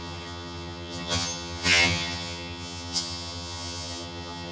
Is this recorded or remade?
remade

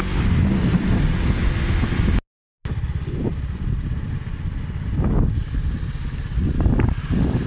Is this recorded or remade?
recorded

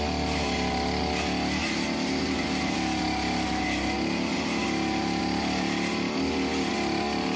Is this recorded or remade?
recorded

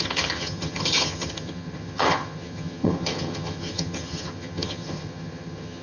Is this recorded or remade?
remade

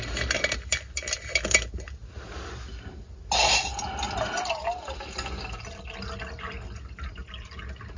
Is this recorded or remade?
recorded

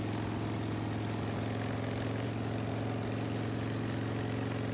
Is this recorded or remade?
recorded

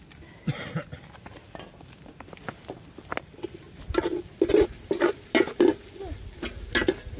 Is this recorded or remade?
recorded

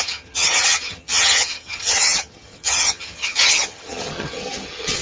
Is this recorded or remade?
remade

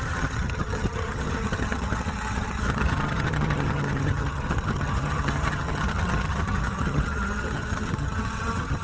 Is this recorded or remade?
remade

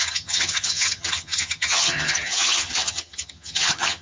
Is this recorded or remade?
remade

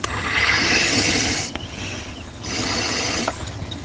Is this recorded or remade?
remade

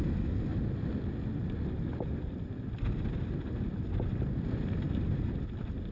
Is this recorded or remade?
recorded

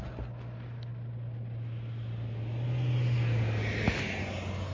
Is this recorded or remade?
recorded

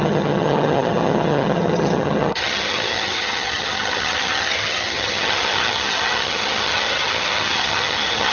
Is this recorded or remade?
remade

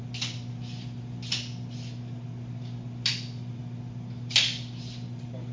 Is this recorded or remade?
recorded